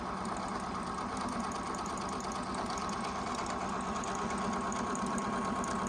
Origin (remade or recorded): recorded